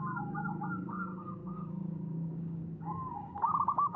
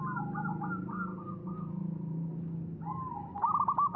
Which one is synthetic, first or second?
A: first